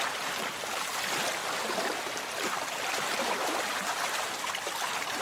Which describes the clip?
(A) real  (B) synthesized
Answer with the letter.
A